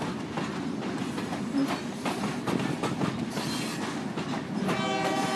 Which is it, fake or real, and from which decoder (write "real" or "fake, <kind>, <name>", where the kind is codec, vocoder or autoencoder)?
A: real